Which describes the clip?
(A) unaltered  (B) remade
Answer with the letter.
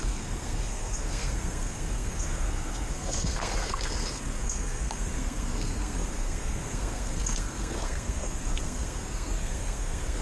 B